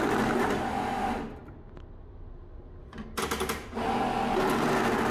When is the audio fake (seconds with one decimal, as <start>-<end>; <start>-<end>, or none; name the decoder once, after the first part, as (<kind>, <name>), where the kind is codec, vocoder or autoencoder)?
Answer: none